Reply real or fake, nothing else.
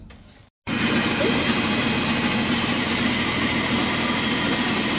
real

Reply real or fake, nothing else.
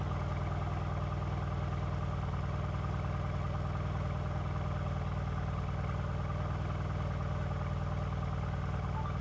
real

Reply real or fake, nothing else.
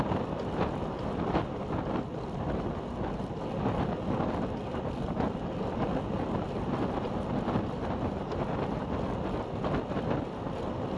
real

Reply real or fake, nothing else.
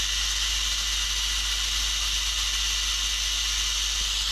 real